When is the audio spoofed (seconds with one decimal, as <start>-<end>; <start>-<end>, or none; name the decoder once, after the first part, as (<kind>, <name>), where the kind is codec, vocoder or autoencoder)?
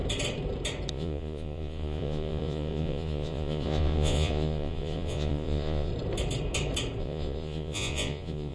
0.9-5.9 (vocoder, Vocos); 7.0-8.5